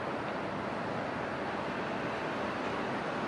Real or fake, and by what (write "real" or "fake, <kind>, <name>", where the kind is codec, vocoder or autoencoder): real